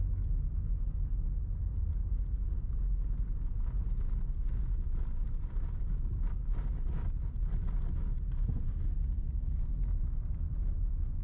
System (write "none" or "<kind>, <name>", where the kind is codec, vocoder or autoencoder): none